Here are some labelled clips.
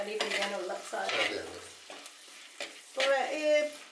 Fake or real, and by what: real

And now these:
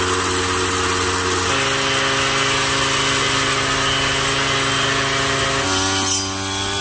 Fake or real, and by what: real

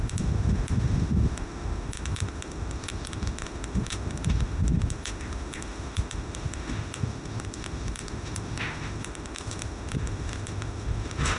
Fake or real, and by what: fake, autoencoder, DAC-VAE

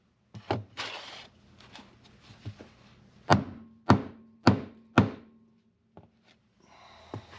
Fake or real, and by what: real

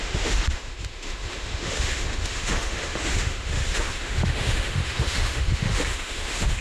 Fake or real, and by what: fake, autoencoder, DAC-VAE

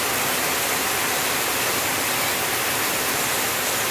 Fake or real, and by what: real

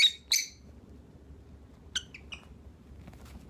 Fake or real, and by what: real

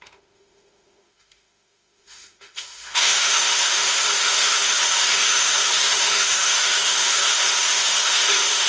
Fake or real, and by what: fake, autoencoder, DAC-VAE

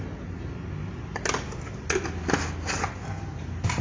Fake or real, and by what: real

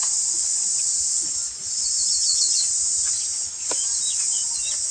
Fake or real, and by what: real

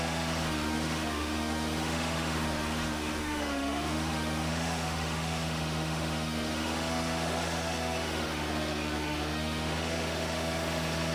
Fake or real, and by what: fake, autoencoder, DAC-VAE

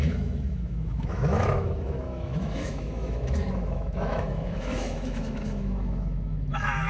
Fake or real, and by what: fake, autoencoder, DAC-VAE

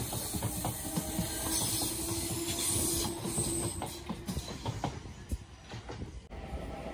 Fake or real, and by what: real